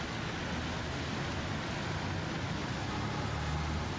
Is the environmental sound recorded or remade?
recorded